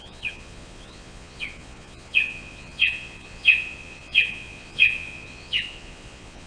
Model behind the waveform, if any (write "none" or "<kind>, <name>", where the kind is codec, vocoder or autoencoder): vocoder, Vocos